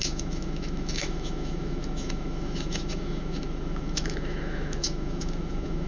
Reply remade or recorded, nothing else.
remade